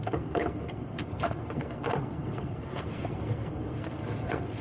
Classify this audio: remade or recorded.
remade